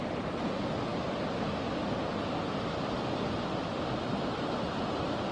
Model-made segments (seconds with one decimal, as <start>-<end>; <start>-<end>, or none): none